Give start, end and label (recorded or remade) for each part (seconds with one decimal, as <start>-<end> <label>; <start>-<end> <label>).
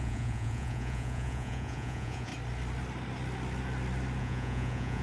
0.0-2.3 remade; 2.3-4.2 recorded; 4.2-5.0 remade